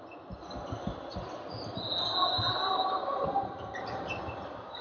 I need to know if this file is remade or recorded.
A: recorded